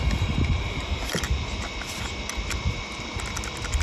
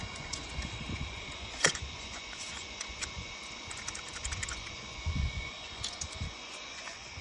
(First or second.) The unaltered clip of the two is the first